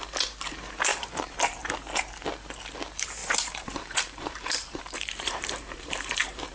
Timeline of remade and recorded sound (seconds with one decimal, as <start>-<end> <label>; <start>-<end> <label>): 0.0-0.9 recorded; 0.9-1.7 remade; 1.7-3.2 recorded; 3.2-6.5 remade